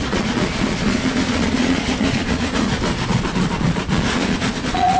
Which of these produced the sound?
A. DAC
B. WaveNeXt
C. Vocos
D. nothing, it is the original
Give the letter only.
C